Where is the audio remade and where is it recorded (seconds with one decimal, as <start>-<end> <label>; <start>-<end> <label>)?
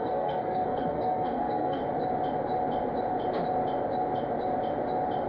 0.0-1.8 remade; 1.8-5.3 recorded